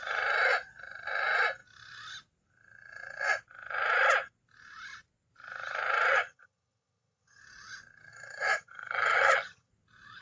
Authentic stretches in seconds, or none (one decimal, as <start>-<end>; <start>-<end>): 0.0-6.1; 7.4-8.1; 9.7-10.2